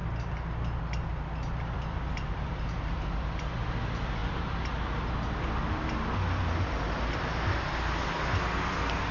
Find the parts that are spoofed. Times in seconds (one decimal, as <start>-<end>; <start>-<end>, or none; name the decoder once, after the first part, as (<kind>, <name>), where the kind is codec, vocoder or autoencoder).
none